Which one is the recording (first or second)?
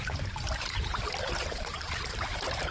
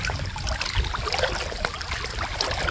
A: second